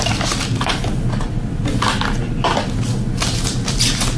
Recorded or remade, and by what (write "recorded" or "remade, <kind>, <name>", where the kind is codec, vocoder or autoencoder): recorded